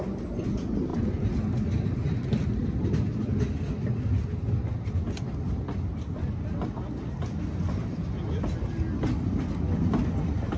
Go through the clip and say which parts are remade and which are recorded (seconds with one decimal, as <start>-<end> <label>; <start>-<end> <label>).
0.0-10.6 recorded